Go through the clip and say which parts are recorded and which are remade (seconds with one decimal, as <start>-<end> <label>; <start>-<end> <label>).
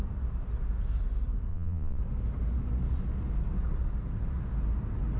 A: 0.0-1.5 recorded; 1.5-2.0 remade; 2.0-5.2 recorded